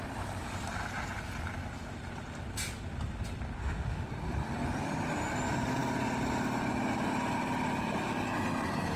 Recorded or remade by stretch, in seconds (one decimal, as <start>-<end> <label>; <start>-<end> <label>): 0.0-3.6 recorded; 3.6-4.1 remade; 4.1-9.0 recorded